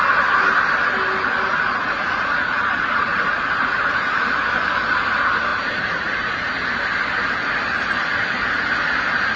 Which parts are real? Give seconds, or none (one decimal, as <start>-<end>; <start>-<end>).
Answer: 0.0-1.5; 4.2-5.5; 6.5-9.4